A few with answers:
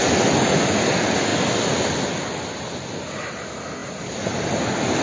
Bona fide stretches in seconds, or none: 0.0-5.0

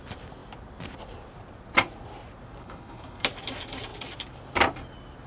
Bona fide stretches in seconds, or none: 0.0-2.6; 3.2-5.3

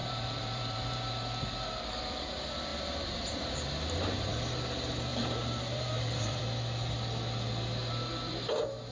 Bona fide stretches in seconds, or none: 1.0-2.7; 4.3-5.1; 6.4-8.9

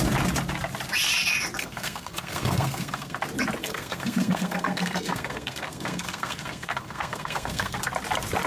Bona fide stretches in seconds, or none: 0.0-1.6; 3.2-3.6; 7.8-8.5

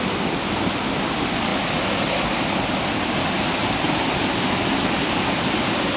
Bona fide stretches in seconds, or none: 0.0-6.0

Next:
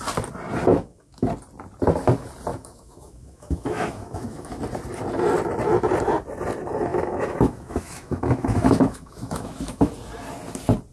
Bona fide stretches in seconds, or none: 0.0-0.7; 1.3-2.5; 4.6-6.9; 9.9-10.9

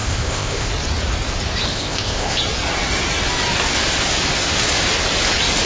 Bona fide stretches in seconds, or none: 0.7-1.7; 2.4-5.7